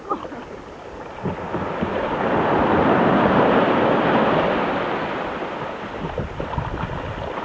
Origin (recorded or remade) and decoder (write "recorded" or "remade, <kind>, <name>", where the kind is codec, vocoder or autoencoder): recorded